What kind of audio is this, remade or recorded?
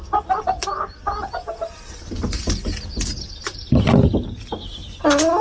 recorded